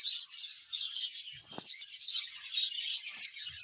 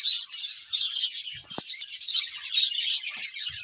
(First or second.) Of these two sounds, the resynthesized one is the second